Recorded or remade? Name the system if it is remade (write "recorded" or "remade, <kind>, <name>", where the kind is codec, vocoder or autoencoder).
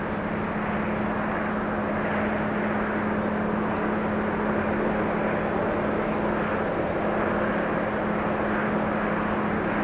recorded